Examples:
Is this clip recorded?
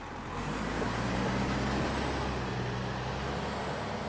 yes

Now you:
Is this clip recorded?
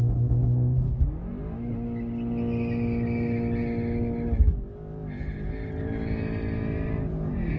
yes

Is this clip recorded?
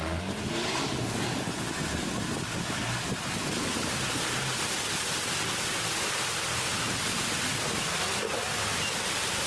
yes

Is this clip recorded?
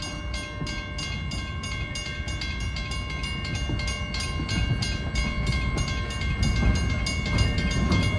yes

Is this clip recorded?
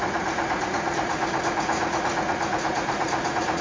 no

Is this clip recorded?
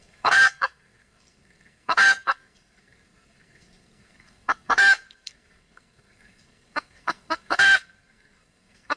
no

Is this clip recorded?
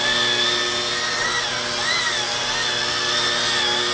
yes